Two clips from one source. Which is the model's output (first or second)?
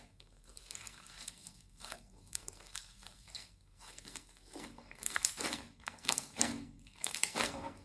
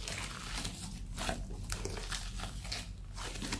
first